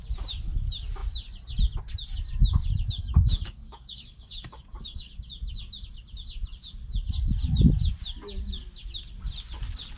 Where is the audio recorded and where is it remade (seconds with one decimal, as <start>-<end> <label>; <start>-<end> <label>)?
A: 0.0-3.0 recorded; 3.0-5.1 remade; 5.1-10.0 recorded